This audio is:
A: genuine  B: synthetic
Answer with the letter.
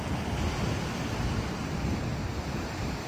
A